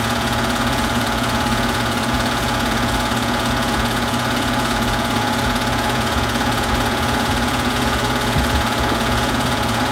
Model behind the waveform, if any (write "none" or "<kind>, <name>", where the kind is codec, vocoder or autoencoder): vocoder, Vocos